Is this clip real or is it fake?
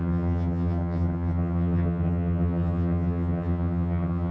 fake